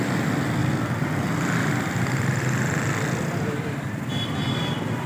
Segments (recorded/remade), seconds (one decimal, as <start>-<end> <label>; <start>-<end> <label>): 0.0-5.1 recorded